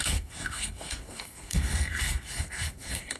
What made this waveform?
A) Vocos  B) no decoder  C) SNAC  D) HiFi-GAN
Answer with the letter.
C